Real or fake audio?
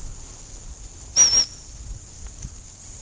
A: real